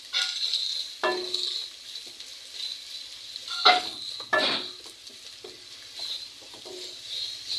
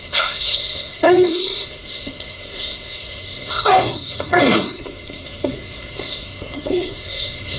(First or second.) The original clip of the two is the first